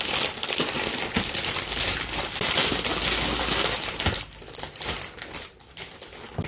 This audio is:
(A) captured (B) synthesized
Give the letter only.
A